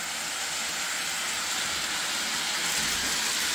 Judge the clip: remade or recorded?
recorded